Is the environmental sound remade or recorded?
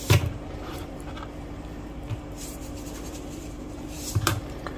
remade